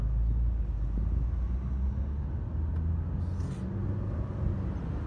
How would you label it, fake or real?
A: real